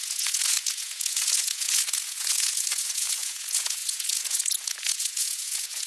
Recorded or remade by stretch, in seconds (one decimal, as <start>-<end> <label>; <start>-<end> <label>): 0.0-5.9 remade

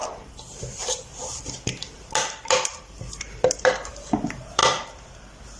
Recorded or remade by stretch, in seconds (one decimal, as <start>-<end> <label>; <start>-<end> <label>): 0.0-4.6 remade; 4.6-5.6 recorded

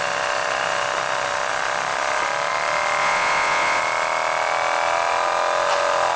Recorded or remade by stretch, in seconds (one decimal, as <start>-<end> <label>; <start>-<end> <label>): 0.0-3.0 recorded; 3.0-3.8 remade; 3.8-6.2 recorded

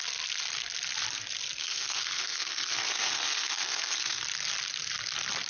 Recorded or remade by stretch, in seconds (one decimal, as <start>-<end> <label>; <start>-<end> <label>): 0.0-1.6 recorded; 1.6-4.2 remade; 4.2-5.5 recorded

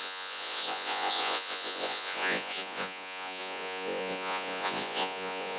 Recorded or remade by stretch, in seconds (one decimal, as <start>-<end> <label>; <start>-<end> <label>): 0.0-5.6 remade

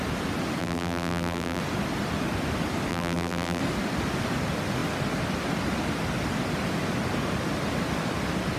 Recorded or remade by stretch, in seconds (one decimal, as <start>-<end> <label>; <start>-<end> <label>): 0.0-0.6 recorded; 0.6-1.6 remade; 1.6-2.9 recorded; 2.9-3.6 remade; 3.6-8.6 recorded

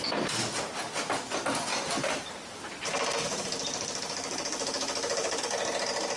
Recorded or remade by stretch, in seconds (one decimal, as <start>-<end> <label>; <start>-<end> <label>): 0.0-1.7 recorded; 1.7-5.4 remade; 5.4-6.2 recorded

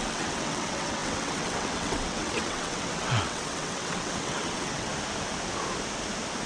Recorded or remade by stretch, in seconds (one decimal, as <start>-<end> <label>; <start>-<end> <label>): 0.0-4.9 remade; 4.9-6.5 recorded